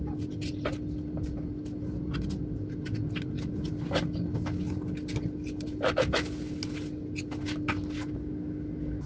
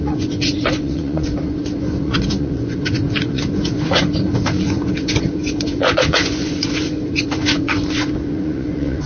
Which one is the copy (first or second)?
second